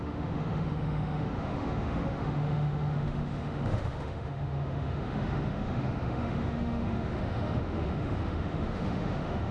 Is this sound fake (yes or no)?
yes